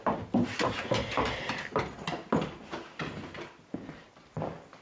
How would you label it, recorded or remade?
recorded